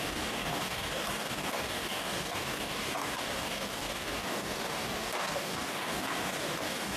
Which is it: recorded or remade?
remade